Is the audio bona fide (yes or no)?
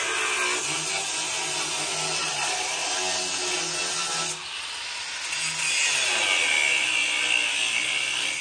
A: yes